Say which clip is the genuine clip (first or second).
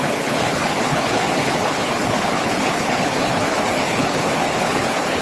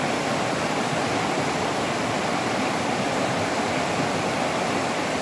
second